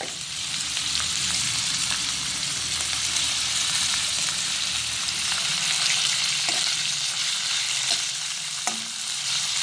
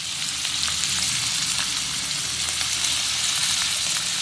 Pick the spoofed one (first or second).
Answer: first